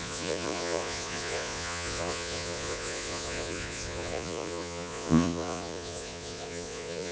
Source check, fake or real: fake